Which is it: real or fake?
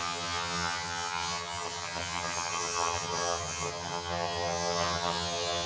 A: fake